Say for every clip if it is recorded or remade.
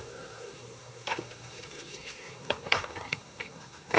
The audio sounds remade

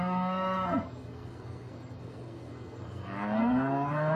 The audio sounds remade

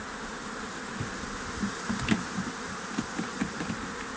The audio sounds recorded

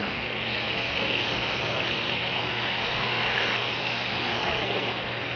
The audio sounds remade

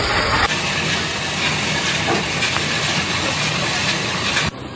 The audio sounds recorded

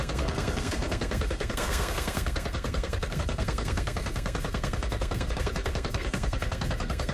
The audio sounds remade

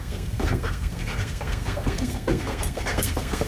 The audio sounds remade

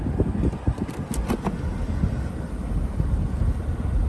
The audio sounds recorded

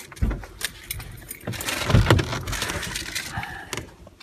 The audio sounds recorded